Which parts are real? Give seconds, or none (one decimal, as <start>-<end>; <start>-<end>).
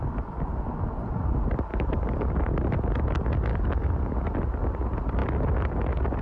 0.0-1.7; 2.3-3.5; 4.3-6.2